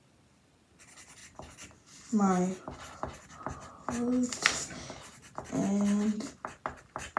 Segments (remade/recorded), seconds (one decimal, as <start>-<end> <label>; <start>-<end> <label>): 0.0-7.2 recorded